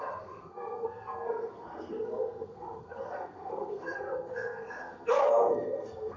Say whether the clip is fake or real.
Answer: fake